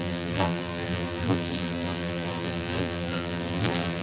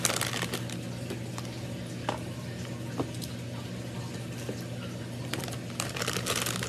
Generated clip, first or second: first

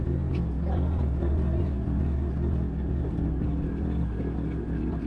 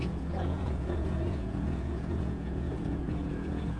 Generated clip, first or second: second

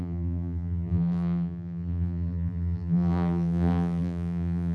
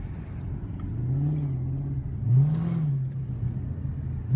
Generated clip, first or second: first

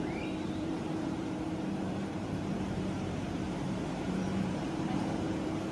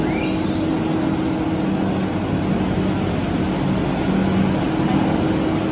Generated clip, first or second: first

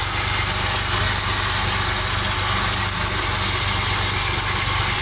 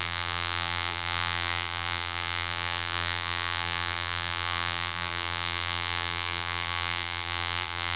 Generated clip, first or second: second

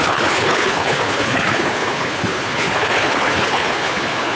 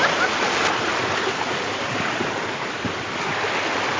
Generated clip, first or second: first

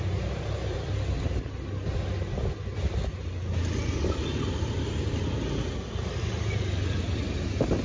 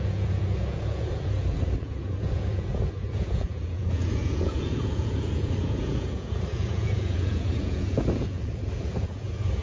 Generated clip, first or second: second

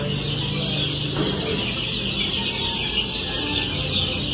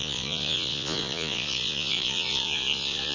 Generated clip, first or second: second